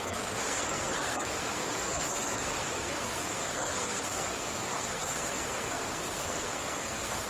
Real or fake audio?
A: fake